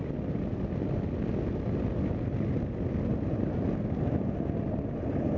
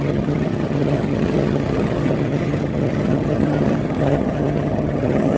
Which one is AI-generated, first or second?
second